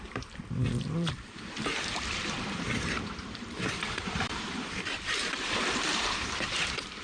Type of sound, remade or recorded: remade